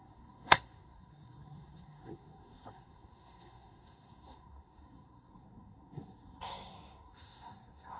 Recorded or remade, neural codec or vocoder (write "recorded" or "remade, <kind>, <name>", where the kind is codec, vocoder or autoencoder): remade, codec, SNAC